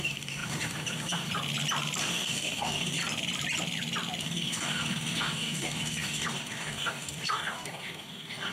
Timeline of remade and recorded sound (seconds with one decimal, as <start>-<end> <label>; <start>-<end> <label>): 0.0-1.3 remade; 1.3-2.0 recorded; 2.0-3.0 remade; 3.0-4.2 recorded; 4.2-8.5 remade